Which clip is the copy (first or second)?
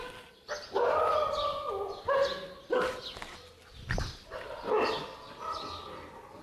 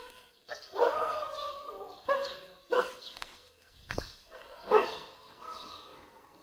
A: second